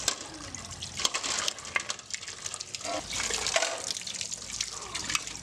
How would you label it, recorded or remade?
recorded